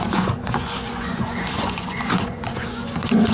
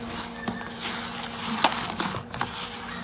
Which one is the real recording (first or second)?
second